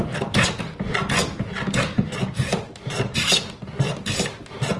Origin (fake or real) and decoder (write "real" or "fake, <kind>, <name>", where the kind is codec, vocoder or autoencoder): real